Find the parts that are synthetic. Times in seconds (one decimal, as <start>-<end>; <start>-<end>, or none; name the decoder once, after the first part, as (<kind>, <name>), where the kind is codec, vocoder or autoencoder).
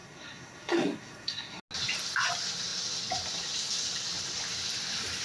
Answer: 0.0-1.6 (codec, SNAC)